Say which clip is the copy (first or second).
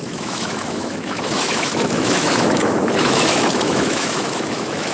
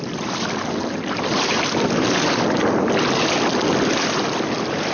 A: first